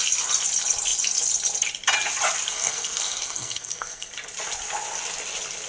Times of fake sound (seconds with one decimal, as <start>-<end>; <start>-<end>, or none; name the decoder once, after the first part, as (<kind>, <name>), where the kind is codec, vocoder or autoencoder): 2.5-4.1 (codec, SNAC)